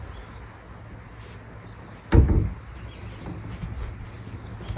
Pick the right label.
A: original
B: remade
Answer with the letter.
A